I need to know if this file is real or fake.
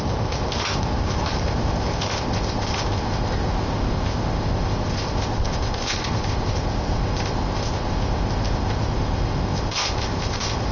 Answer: fake